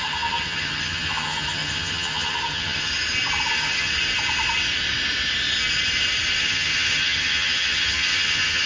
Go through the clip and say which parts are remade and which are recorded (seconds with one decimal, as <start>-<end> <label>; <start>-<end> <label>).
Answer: 0.0-2.9 remade; 2.9-3.5 recorded; 3.5-3.9 remade; 3.9-6.4 recorded; 6.4-8.7 remade